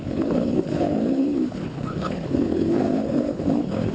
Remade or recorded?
remade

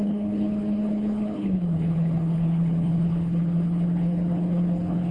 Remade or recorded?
remade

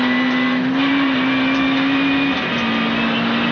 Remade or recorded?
recorded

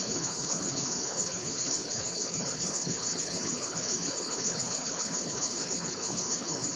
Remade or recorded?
remade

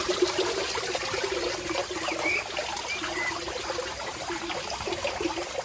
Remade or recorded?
recorded